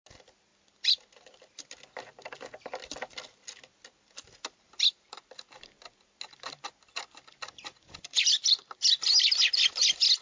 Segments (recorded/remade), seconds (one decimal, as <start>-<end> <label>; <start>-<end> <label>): 0.0-10.2 recorded

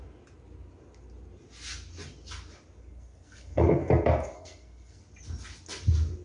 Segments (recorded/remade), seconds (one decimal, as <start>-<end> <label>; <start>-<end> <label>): 0.0-2.8 recorded; 2.8-5.0 remade; 5.0-6.2 recorded

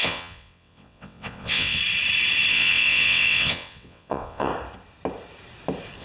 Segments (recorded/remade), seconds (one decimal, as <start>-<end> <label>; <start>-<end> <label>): 0.0-1.8 remade; 1.8-2.5 recorded; 2.5-4.5 remade; 4.5-6.0 recorded

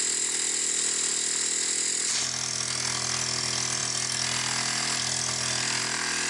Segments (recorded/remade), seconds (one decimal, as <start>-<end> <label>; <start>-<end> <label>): 0.0-6.3 recorded

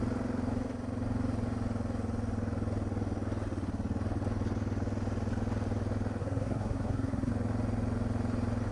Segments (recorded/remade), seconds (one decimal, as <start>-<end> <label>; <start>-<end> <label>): 0.0-6.2 recorded; 6.2-7.3 remade; 7.3-8.7 recorded

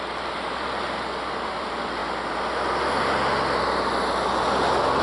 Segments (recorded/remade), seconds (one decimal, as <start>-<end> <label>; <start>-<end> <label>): 0.0-2.0 remade; 2.0-5.0 recorded